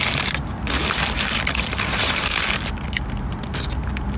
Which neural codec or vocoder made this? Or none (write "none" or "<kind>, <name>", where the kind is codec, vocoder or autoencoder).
none